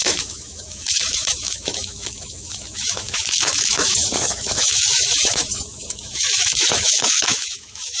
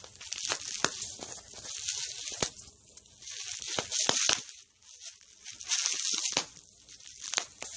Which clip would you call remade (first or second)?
first